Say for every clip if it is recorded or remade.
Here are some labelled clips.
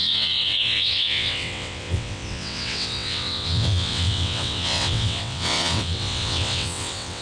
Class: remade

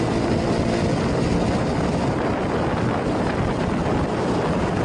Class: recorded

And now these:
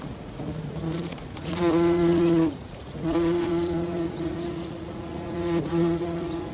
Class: remade